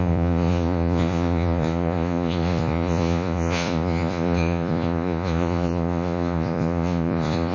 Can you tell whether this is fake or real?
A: fake